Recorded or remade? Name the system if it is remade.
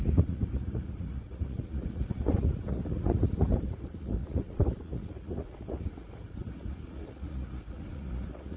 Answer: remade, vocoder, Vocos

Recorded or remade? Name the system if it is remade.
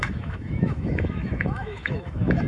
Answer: remade, autoencoder, DAC-VAE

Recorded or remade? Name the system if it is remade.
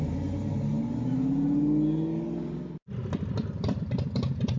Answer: recorded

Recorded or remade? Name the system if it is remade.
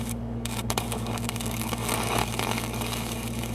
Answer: remade, codec, DAC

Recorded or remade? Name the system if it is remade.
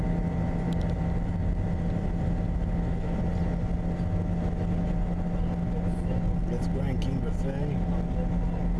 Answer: recorded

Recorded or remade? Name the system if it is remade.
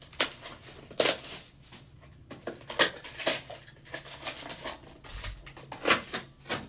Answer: recorded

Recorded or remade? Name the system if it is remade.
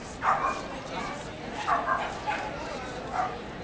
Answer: recorded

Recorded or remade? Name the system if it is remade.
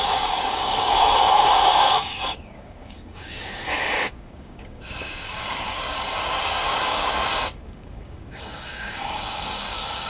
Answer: remade, codec, DAC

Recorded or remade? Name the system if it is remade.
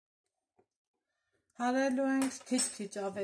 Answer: recorded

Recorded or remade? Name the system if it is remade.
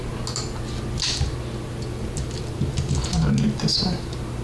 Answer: recorded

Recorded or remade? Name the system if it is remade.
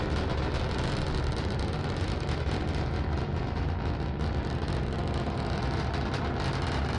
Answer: recorded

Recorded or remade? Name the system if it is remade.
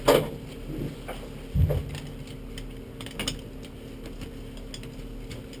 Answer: recorded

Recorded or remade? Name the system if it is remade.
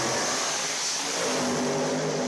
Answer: recorded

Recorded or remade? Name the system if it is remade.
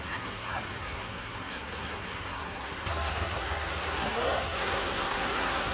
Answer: remade, codec, SNAC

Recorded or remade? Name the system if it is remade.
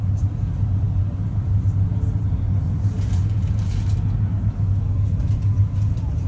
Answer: recorded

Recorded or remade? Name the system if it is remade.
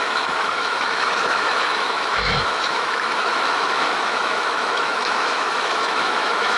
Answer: remade, autoencoder, DAC-VAE